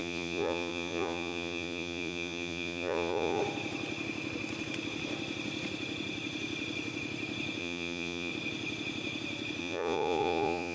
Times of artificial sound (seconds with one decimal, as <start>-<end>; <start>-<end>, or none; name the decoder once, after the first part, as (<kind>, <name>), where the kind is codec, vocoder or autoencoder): 0.0-3.4 (vocoder, Vocos); 7.6-8.3; 9.6-10.7